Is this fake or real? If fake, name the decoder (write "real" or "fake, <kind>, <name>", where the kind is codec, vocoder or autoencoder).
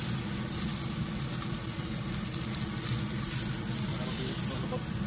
real